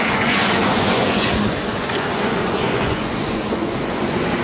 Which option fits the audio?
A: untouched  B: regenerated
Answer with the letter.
B